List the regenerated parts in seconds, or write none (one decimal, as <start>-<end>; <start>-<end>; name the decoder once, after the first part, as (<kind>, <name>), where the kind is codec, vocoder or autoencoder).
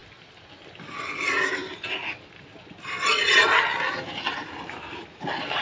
none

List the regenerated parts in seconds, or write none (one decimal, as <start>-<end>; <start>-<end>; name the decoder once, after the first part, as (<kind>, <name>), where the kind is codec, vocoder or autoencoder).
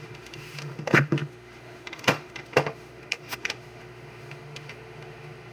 0.0-5.5 (autoencoder, DAC-VAE)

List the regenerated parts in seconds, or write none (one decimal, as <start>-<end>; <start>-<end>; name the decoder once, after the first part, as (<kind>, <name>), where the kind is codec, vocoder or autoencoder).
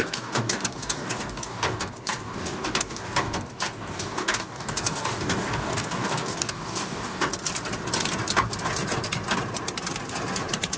0.0-7.3 (codec, DAC)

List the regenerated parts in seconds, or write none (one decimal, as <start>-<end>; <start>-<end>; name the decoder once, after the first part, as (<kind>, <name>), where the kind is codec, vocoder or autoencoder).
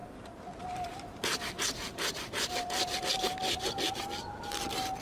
0.0-3.0 (vocoder, BigVGAN v2)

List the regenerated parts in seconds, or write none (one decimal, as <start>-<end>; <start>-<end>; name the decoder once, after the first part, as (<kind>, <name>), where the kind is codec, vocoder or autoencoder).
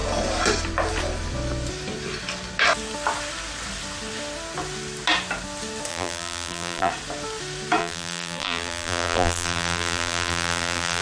5.9-6.9 (vocoder, BigVGAN v2); 7.8-11.0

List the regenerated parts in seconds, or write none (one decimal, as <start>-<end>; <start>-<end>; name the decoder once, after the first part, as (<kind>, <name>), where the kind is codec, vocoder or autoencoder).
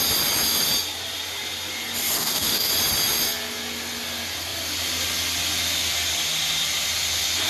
2.0-2.7 (codec, DAC)